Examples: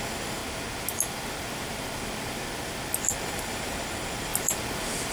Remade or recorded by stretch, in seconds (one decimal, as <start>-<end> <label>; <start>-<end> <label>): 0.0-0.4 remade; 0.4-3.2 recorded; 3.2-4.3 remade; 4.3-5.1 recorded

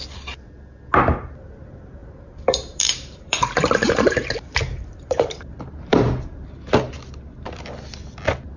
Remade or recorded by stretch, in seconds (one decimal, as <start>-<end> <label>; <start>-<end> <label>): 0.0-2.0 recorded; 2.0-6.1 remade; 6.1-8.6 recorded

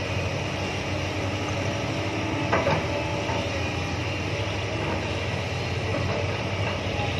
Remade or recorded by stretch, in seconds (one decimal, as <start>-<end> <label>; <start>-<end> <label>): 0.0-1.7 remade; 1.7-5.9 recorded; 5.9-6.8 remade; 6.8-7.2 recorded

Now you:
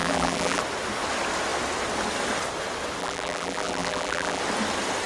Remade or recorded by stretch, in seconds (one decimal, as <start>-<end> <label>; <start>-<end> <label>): 0.0-0.6 remade; 0.6-3.0 recorded; 3.0-4.4 remade; 4.4-5.1 recorded

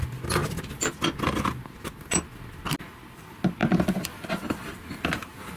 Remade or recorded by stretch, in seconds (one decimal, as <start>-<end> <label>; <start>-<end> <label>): 0.0-5.6 recorded

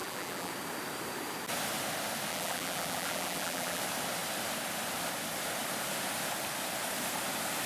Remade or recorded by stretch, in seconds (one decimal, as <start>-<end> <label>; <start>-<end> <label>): 0.0-0.5 remade; 0.5-2.3 recorded; 2.3-3.8 remade; 3.8-7.7 recorded

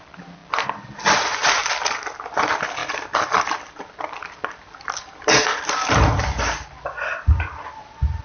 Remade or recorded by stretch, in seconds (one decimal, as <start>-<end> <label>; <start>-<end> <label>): 0.0-0.4 recorded; 0.4-1.7 remade; 1.7-2.8 recorded; 2.8-7.7 remade; 7.7-8.2 recorded